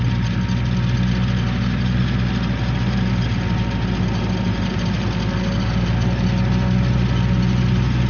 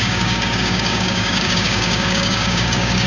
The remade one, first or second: second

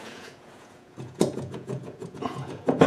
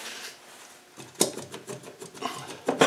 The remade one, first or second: first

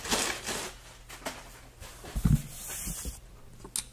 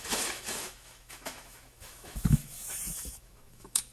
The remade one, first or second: second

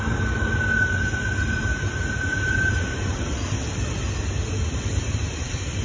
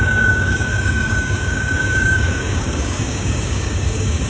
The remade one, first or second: second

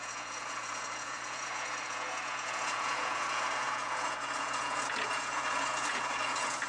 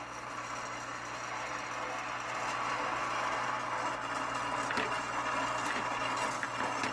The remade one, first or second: first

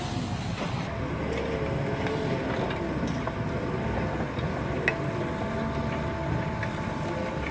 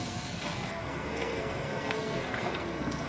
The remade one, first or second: second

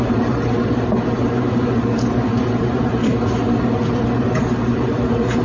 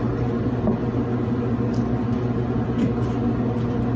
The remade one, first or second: first